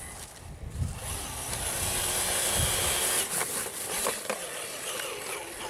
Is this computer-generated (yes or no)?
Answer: no